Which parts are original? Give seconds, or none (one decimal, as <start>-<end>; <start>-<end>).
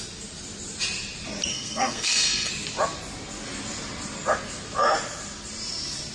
0.0-1.5; 2.5-6.1